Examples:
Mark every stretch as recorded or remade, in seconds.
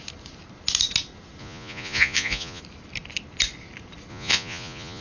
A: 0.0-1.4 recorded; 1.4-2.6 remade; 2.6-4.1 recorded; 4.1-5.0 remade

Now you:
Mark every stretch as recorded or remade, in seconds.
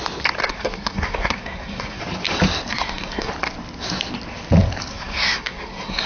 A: 0.0-0.4 recorded; 0.4-2.0 remade; 2.0-2.7 recorded; 2.7-3.3 remade; 3.3-4.9 recorded; 4.9-6.1 remade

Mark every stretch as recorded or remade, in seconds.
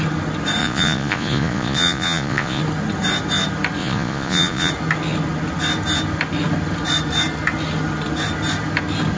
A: 0.0-0.6 recorded; 0.6-2.6 remade; 2.6-3.8 recorded; 3.8-4.7 remade; 4.7-9.2 recorded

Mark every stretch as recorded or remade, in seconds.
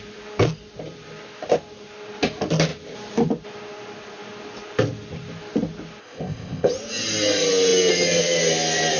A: 0.0-6.0 recorded; 6.0-6.7 remade; 6.7-9.0 recorded